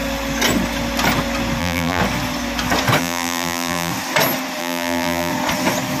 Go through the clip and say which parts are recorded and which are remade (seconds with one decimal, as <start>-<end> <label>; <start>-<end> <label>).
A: 0.0-1.6 recorded; 1.6-2.0 remade; 2.0-3.0 recorded; 3.0-3.9 remade; 3.9-4.6 recorded; 4.6-5.3 remade; 5.3-6.0 recorded

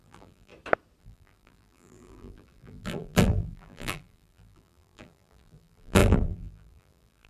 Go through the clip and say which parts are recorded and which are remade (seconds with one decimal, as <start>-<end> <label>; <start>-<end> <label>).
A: 0.0-0.5 remade; 0.5-1.0 recorded; 1.0-7.3 remade

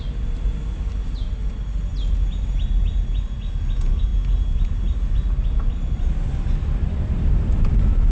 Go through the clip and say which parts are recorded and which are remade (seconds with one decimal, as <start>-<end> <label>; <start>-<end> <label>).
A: 0.0-8.1 recorded

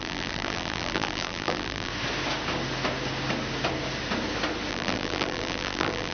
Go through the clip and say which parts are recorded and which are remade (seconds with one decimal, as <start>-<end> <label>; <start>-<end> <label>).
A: 0.0-1.9 remade; 1.9-4.7 recorded; 4.7-6.1 remade